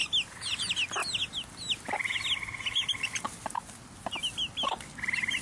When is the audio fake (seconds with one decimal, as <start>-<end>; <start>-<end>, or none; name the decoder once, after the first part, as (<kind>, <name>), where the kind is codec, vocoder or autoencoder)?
none